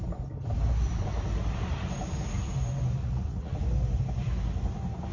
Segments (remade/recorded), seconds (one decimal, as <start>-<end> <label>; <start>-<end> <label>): 0.0-3.0 recorded; 3.0-3.6 remade; 3.6-5.1 recorded